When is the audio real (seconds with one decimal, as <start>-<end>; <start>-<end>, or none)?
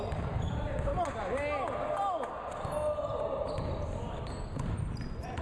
0.9-4.1